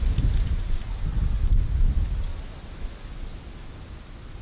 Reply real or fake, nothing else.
real